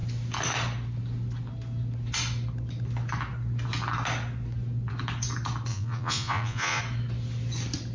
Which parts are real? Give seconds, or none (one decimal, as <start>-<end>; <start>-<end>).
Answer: 0.0-5.7; 6.8-7.9

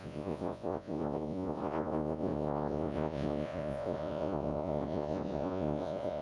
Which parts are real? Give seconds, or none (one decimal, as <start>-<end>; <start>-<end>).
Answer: none

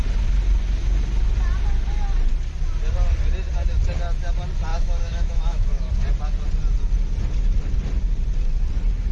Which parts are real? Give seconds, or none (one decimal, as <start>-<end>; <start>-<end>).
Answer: 0.0-4.7; 5.9-9.1

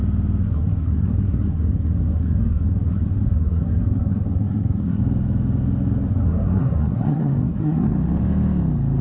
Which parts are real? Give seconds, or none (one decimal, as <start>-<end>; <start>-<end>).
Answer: 0.0-0.4; 5.0-6.1; 7.9-9.0

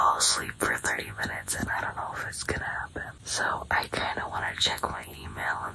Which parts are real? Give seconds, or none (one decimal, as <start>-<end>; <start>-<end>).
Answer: 1.6-4.3